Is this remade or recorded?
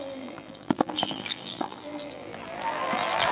remade